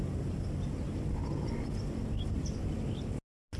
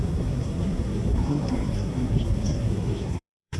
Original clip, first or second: first